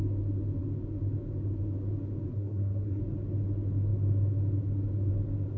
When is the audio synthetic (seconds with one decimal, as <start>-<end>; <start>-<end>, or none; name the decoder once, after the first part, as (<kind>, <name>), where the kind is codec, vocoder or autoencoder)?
2.3-3.0 (codec, SNAC)